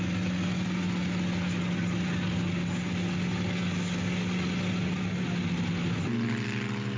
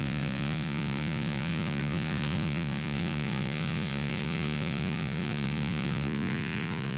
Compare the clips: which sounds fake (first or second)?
second